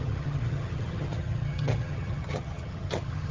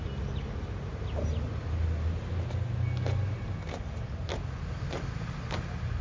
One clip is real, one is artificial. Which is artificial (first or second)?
first